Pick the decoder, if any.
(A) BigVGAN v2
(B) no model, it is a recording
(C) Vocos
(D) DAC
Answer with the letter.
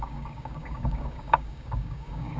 D